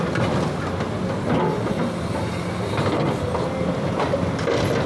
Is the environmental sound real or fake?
real